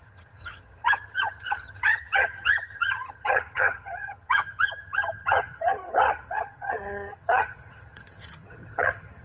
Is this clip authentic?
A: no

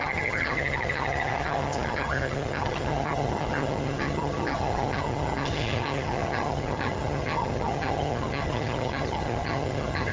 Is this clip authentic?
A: no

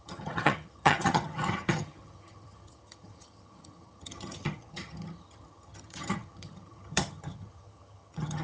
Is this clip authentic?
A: no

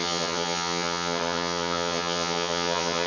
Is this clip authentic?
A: no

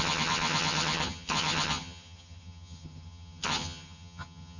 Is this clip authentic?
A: no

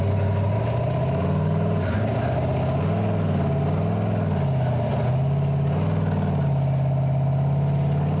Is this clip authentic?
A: yes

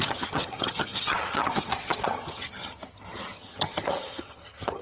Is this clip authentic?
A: no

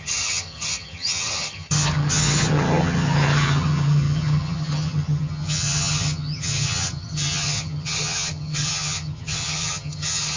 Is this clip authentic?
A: no